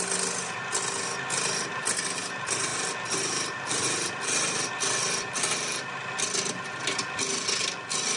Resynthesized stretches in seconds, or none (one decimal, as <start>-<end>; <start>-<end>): none